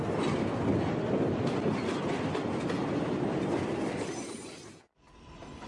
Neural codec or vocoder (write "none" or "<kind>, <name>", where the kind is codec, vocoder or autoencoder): none